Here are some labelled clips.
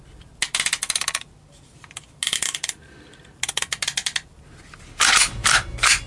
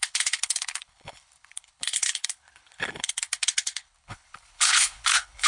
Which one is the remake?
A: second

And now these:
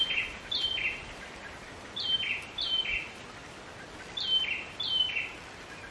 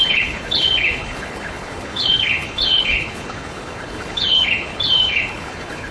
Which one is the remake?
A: second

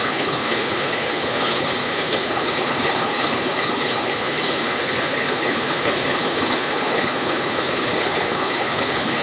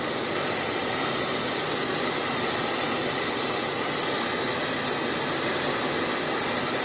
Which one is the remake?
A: first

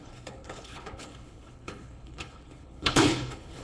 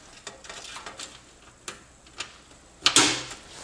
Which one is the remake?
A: first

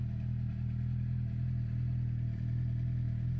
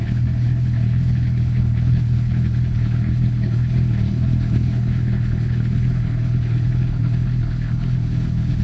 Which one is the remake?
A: second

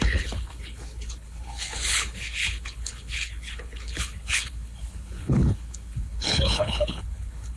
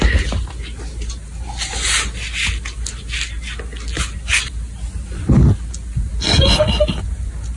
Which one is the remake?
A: first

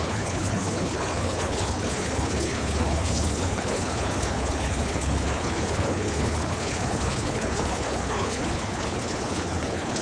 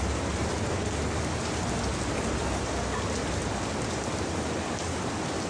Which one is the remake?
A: first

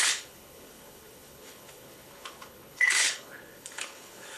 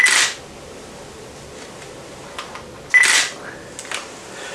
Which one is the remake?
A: first